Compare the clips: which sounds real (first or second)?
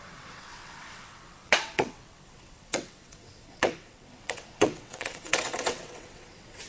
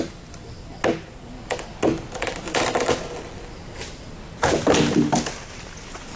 second